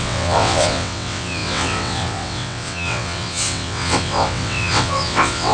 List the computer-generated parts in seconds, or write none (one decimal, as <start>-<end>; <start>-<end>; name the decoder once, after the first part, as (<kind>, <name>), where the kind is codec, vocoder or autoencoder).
0.0-5.5 (vocoder, WaveNeXt)